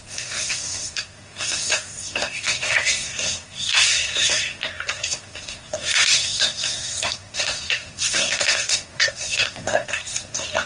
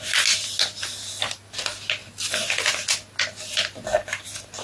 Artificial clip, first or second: first